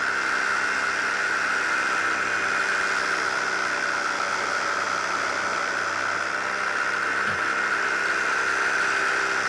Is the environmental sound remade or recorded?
recorded